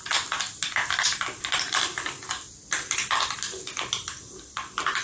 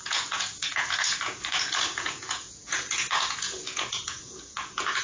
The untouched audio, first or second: first